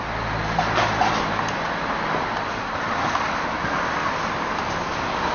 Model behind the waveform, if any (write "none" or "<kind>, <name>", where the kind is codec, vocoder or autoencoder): none